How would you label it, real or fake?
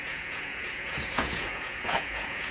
fake